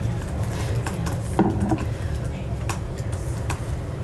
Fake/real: real